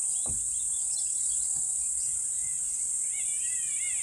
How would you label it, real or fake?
real